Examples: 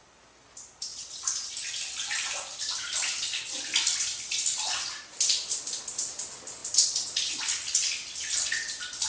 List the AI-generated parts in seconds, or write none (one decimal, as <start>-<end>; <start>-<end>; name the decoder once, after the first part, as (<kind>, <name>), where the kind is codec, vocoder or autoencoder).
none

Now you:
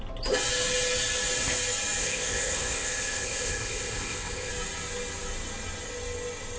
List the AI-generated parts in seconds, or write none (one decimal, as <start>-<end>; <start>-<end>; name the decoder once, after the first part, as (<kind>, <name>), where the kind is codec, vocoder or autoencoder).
2.0-4.5 (codec, ZipCodec)

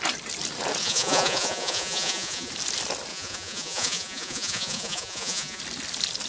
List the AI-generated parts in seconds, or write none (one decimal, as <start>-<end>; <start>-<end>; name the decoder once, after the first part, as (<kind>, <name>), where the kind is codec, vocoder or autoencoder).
0.8-2.5 (vocoder, Vocos); 3.1-5.6

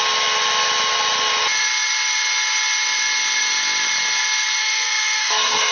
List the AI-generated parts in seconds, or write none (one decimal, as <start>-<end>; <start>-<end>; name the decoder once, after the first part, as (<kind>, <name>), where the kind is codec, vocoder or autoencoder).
4.6-5.7 (codec, SNAC)

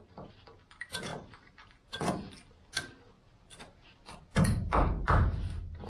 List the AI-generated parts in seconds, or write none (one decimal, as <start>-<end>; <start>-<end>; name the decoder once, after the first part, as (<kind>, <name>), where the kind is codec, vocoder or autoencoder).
none

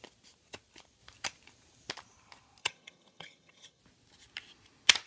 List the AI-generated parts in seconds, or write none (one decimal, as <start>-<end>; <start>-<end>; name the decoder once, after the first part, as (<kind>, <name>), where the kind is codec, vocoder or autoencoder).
2.6-3.8 (vocoder, HiFi-GAN)

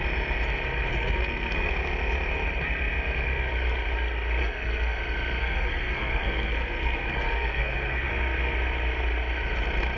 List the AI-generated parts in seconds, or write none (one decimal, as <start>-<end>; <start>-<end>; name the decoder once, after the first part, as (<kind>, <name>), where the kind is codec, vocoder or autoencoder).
0.9-1.7 (codec, SNAC); 4.4-5.0; 5.4-8.1